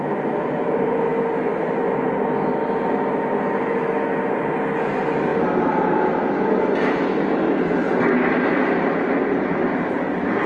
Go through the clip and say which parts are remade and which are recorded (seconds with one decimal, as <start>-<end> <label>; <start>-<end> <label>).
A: 0.0-10.5 recorded